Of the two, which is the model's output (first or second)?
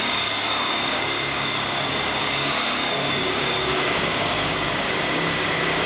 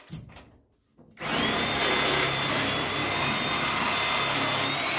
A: first